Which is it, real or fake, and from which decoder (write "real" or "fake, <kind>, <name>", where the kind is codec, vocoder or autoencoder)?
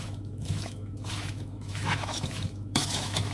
fake, autoencoder, DAC-VAE